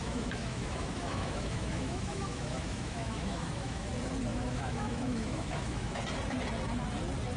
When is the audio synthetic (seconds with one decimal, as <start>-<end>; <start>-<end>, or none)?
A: 0.0-3.9; 4.3-6.0